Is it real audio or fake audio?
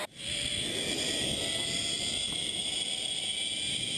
real